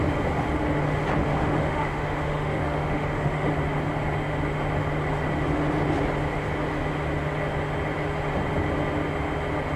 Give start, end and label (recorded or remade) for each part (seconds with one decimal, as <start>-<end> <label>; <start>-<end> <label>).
0.0-1.2 recorded; 1.2-3.5 remade; 3.5-9.8 recorded